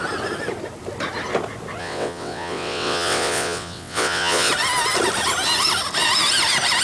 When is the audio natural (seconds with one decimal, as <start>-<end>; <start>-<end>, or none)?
0.0-1.8; 4.5-6.8